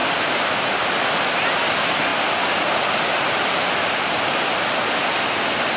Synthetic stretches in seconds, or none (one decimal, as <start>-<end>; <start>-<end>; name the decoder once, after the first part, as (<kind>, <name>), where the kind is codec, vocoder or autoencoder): none